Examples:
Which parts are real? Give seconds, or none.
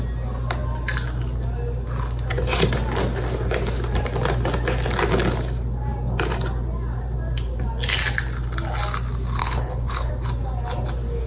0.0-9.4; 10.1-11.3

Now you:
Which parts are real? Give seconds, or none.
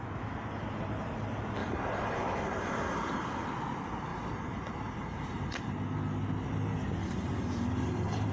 0.0-1.6; 3.5-4.1; 5.7-7.0